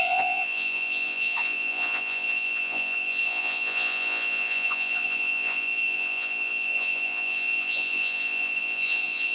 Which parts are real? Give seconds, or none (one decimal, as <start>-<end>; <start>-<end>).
none